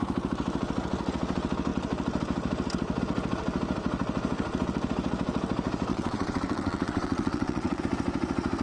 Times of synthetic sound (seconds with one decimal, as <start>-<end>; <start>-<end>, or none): 5.9-7.8